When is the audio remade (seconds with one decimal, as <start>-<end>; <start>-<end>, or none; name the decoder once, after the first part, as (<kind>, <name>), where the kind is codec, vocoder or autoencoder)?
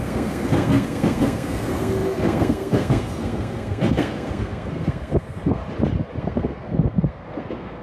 0.0-5.6 (codec, SNAC); 6.2-7.8